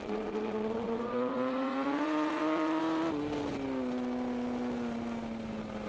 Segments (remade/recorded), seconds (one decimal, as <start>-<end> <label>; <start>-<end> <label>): 0.0-2.8 remade; 2.8-5.9 recorded